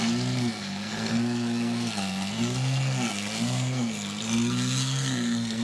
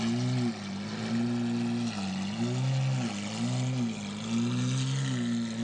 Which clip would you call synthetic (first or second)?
first